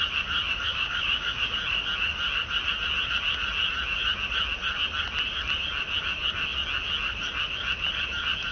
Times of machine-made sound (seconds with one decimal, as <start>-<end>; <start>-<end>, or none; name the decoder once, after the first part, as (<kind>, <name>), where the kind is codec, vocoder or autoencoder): 0.7-1.6 (codec, DAC)